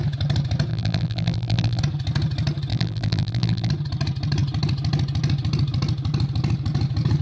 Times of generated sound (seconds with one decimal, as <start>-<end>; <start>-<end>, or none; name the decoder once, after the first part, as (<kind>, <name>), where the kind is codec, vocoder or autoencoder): 0.7-1.8 (vocoder, BigVGAN v2); 2.7-3.7